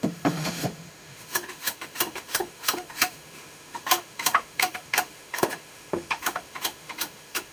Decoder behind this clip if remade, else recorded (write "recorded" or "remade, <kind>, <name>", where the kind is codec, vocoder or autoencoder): remade, autoencoder, DAC-VAE